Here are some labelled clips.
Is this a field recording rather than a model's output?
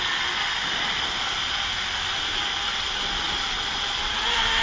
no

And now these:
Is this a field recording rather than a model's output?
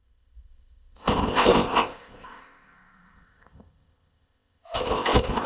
no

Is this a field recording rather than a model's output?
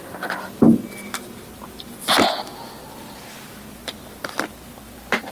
yes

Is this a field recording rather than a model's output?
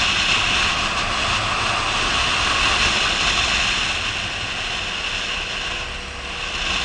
yes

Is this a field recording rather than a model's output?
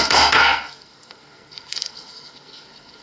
no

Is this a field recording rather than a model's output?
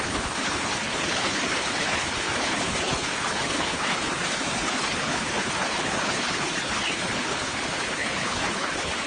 no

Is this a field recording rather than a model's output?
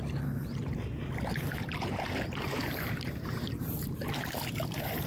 no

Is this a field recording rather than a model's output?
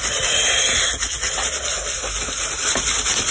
yes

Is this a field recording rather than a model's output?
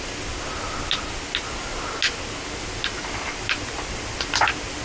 yes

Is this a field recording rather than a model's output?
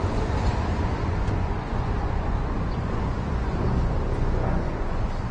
no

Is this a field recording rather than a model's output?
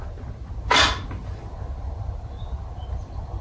yes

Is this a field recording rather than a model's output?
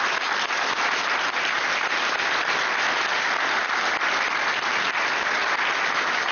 yes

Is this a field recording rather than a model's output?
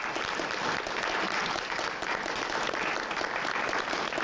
yes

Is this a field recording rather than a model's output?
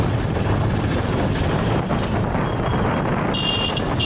yes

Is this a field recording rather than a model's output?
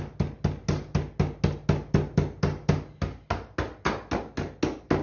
yes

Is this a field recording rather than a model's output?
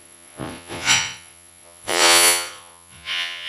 no